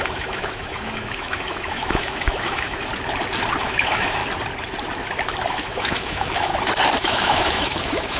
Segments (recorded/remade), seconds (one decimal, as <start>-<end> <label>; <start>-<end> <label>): 0.0-2.9 remade; 2.9-3.6 recorded; 3.6-4.2 remade; 4.2-5.5 recorded; 5.5-6.5 remade; 6.5-7.0 recorded; 7.0-8.2 remade